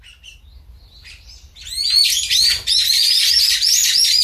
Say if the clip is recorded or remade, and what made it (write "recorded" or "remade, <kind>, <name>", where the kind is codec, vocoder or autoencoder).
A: recorded